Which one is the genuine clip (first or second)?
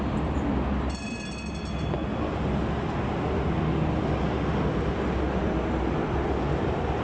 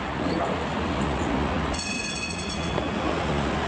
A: first